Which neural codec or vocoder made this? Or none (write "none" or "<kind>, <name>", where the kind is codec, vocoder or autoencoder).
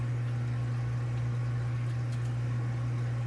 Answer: none